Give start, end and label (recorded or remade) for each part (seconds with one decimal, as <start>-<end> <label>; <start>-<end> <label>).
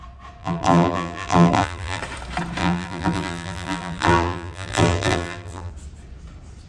0.0-0.4 recorded; 0.4-2.0 remade; 2.0-2.6 recorded; 2.6-5.7 remade; 5.7-6.7 recorded